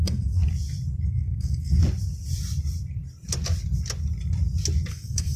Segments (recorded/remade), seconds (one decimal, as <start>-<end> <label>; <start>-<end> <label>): 0.0-0.4 remade; 0.4-1.1 recorded; 1.1-1.8 remade; 1.8-4.9 recorded; 4.9-5.4 remade

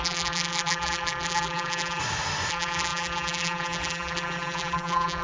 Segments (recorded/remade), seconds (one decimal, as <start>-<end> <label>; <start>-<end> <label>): 0.0-2.0 remade; 2.0-2.5 recorded; 2.5-5.2 remade

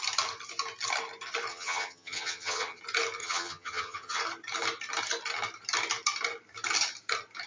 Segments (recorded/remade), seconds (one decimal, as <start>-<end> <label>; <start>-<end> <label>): 0.0-1.5 recorded; 1.5-2.8 remade; 2.8-3.2 recorded; 3.2-4.2 remade; 4.2-7.5 recorded

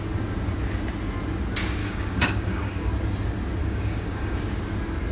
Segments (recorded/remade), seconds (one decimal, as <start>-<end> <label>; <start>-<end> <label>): 0.0-1.8 recorded; 1.8-2.9 remade; 2.9-3.6 recorded; 3.6-4.4 remade; 4.4-5.1 recorded

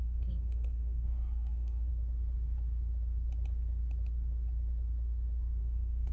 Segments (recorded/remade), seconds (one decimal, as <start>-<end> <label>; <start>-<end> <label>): 0.0-1.9 remade; 1.9-5.6 recorded; 5.6-6.1 remade

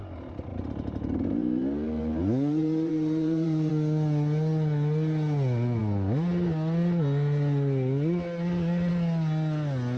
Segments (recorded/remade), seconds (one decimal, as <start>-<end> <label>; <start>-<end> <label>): 0.0-0.5 recorded; 0.5-3.7 remade; 3.7-10.0 recorded

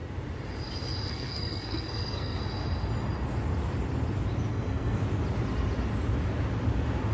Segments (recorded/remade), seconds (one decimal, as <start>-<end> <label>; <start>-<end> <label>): 0.0-1.1 recorded; 1.1-2.4 remade; 2.4-4.5 recorded; 4.5-5.0 remade; 5.0-7.1 recorded

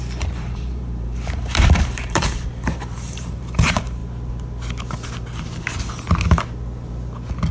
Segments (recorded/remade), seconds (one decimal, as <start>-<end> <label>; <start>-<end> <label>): 0.0-4.0 remade; 4.0-7.5 recorded